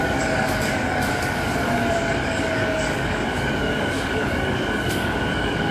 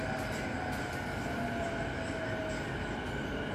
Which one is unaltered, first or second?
second